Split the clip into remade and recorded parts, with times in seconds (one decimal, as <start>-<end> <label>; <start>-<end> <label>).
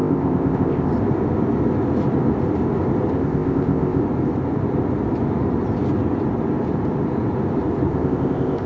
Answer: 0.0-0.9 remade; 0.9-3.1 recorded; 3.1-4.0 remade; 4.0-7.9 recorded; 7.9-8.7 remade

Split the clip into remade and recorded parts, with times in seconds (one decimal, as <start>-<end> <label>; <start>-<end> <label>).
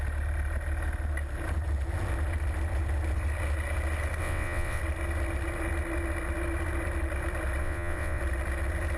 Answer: 0.0-4.2 recorded; 4.2-4.8 remade; 4.8-7.6 recorded; 7.6-8.2 remade; 8.2-9.0 recorded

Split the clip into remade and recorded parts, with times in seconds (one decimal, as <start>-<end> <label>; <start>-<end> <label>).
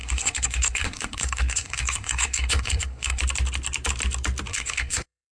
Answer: 0.0-3.2 remade; 3.2-4.5 recorded; 4.5-5.4 remade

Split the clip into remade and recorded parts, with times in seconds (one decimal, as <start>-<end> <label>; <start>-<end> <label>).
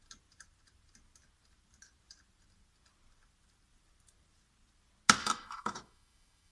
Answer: 0.0-5.2 recorded; 5.2-6.5 remade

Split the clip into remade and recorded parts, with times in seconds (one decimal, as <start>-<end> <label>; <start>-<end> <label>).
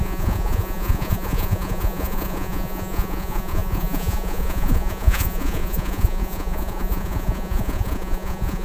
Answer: 0.0-8.6 remade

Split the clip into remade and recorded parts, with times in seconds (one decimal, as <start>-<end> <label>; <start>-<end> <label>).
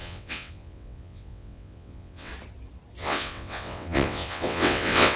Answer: 0.0-2.3 remade; 2.3-3.0 recorded; 3.0-5.2 remade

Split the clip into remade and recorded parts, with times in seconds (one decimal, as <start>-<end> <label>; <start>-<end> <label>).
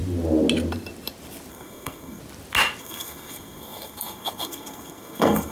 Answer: 0.0-1.5 recorded; 1.5-2.2 remade; 2.2-2.8 recorded; 2.8-5.5 remade